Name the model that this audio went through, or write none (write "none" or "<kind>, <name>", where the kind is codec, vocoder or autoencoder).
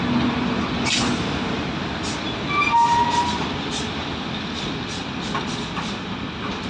none